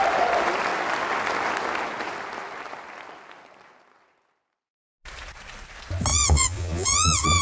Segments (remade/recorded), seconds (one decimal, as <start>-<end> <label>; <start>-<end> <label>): 0.0-6.1 recorded; 6.1-7.4 remade